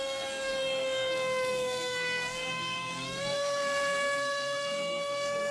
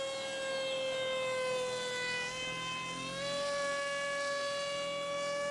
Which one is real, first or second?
second